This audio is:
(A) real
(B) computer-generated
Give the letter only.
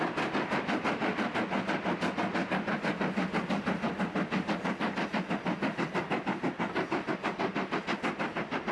A